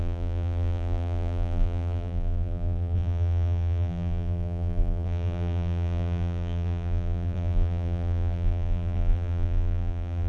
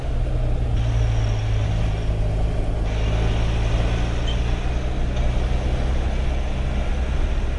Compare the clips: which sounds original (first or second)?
second